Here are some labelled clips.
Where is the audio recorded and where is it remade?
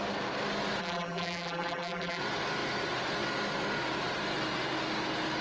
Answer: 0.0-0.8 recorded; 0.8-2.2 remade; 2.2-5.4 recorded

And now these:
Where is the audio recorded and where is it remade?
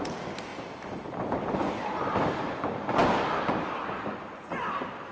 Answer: 0.0-3.0 remade; 3.0-3.8 recorded; 3.8-5.1 remade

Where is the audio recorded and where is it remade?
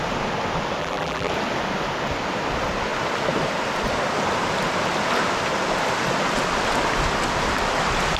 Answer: 0.0-0.8 recorded; 0.8-1.3 remade; 1.3-8.2 recorded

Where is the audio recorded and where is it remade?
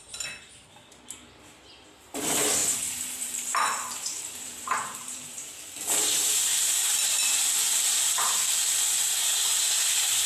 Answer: 0.0-2.6 recorded; 2.6-5.5 remade; 5.5-6.5 recorded; 6.5-8.9 remade; 8.9-10.3 recorded